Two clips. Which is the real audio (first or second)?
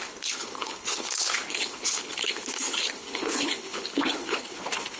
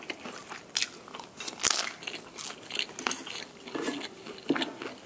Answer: second